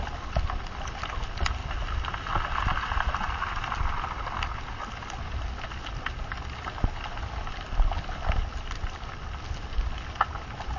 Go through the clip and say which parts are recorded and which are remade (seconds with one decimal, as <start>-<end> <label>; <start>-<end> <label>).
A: 0.0-1.6 recorded; 1.6-2.1 remade; 2.1-8.4 recorded; 8.4-9.4 remade; 9.4-10.8 recorded